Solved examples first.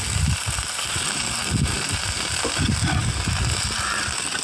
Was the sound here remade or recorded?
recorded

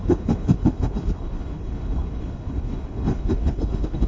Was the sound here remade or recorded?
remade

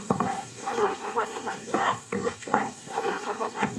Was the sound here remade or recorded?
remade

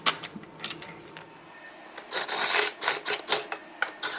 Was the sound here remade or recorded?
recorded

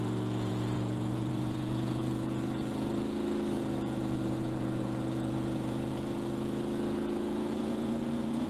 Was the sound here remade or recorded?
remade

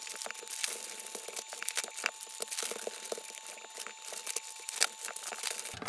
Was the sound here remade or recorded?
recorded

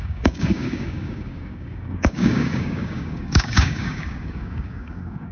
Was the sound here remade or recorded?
remade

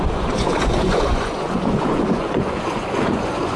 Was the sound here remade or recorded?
remade